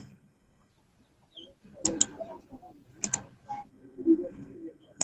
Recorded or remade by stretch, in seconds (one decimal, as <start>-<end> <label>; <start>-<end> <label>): 0.0-0.7 remade; 0.7-3.7 recorded; 3.7-5.0 remade